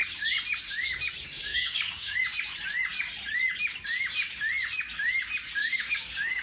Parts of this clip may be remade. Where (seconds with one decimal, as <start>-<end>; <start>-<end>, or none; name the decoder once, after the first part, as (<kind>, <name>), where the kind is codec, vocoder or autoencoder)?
1.5-2.2 (codec, DAC); 5.6-6.4